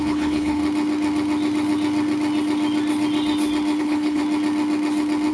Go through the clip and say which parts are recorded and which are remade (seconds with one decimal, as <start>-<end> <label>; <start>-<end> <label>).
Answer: 0.0-0.6 remade; 0.6-3.8 recorded; 3.8-4.2 remade; 4.2-5.3 recorded